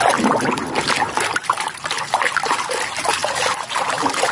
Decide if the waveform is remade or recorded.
recorded